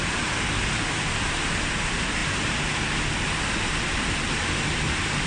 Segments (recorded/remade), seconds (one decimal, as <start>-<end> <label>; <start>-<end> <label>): 0.0-2.2 recorded; 2.2-2.8 remade; 2.8-5.3 recorded